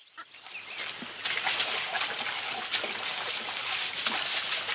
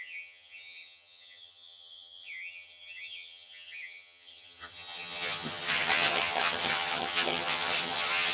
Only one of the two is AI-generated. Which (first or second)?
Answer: second